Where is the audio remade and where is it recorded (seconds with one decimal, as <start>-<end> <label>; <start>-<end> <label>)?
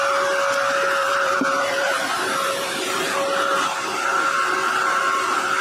0.0-1.0 recorded; 1.0-2.9 remade; 2.9-5.6 recorded